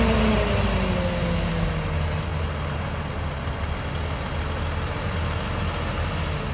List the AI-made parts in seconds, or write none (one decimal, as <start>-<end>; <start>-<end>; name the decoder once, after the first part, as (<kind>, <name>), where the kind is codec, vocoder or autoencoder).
none